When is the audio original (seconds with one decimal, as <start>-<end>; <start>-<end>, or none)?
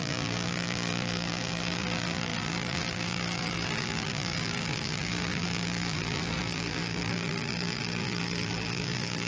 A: none